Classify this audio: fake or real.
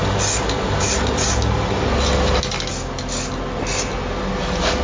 real